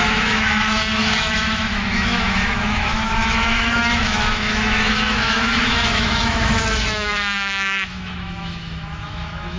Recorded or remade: remade